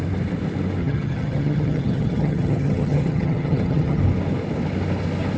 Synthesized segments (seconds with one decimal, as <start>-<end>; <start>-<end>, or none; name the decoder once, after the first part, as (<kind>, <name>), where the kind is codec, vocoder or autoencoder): 0.8-4.0 (vocoder, HiFi-GAN)